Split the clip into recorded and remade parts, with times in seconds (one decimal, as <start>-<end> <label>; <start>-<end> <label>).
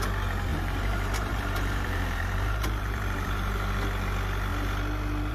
0.0-0.5 recorded; 0.5-3.7 remade; 3.7-5.3 recorded